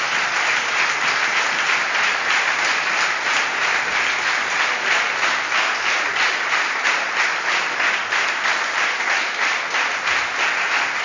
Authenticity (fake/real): real